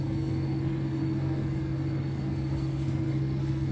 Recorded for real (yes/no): no